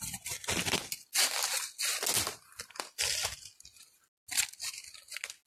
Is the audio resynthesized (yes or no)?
no